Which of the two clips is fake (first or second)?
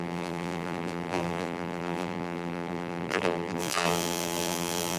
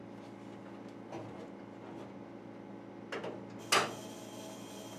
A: first